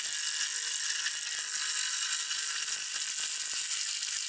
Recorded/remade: recorded